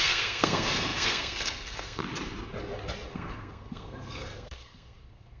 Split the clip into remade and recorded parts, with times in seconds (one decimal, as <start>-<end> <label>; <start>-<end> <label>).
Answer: 0.0-2.0 remade; 2.0-3.1 recorded; 3.1-5.4 remade